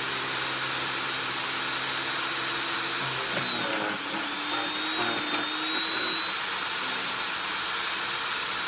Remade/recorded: recorded